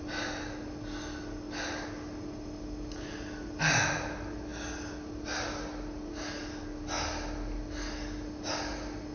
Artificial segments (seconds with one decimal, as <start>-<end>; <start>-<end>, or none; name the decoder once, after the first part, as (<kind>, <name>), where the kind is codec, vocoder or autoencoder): none